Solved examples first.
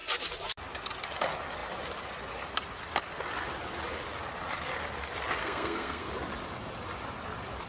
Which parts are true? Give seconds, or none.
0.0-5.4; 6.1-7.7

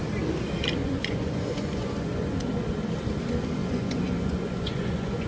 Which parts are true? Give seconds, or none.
0.0-0.8; 2.4-3.6

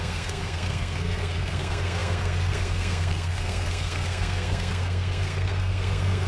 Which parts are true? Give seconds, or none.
none

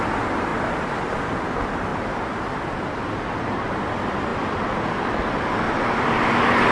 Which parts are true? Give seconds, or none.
0.0-1.9; 2.8-6.7

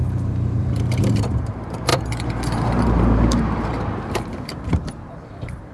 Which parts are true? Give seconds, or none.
none

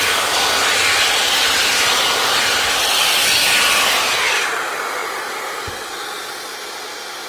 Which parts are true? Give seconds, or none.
0.0-7.3

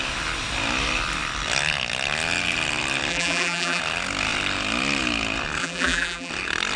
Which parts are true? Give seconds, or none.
0.0-3.1; 3.8-5.6; 6.3-6.8

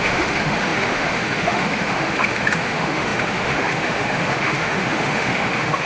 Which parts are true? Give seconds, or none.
none